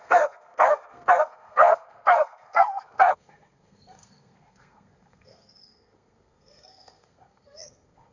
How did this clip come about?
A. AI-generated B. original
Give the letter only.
A